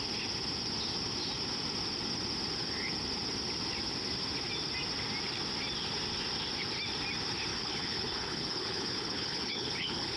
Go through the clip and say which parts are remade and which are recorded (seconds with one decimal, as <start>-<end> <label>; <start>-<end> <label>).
0.0-7.5 recorded; 7.5-10.2 remade

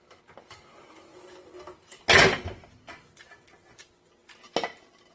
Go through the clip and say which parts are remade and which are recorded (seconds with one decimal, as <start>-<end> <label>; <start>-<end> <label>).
0.0-5.1 recorded

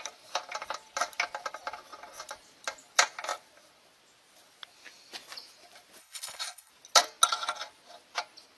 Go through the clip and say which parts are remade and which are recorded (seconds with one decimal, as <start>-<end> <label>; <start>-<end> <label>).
0.0-6.0 recorded; 6.0-6.7 remade; 6.7-8.6 recorded

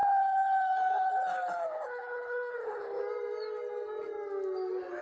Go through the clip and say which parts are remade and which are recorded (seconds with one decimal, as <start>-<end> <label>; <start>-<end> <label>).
0.0-3.0 remade; 3.0-5.0 recorded

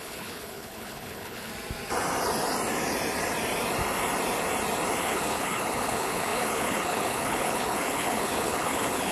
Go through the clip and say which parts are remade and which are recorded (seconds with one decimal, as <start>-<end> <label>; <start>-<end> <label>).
0.0-1.5 remade; 1.5-5.0 recorded; 5.0-9.1 remade